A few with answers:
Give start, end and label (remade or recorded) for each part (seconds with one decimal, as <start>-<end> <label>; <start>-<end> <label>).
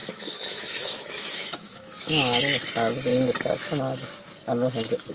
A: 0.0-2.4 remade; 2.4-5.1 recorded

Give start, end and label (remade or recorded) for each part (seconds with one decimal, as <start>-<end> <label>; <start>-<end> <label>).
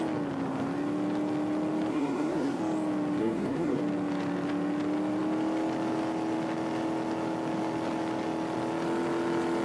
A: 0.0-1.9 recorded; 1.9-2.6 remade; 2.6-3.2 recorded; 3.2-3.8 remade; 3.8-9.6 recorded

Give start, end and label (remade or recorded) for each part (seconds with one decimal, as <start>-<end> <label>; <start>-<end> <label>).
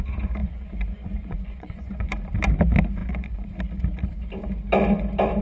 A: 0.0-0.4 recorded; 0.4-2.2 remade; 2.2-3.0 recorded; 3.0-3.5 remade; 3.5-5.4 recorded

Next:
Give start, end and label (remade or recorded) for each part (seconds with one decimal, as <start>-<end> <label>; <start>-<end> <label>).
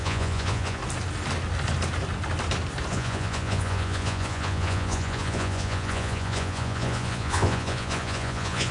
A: 0.0-0.8 remade; 0.8-2.9 recorded; 2.9-8.7 remade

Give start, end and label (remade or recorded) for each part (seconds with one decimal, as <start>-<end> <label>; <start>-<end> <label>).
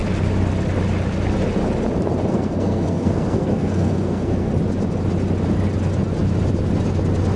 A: 0.0-2.3 recorded; 2.3-4.5 remade; 4.5-7.4 recorded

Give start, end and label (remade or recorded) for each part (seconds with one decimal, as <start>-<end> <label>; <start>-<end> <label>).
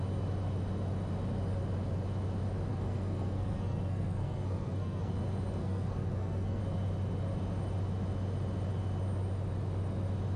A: 0.0-2.7 recorded; 2.7-5.1 remade; 5.1-5.6 recorded; 5.6-6.6 remade; 6.6-10.4 recorded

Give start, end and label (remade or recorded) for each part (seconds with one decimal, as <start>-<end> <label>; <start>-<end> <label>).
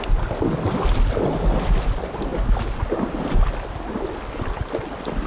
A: 0.0-5.3 recorded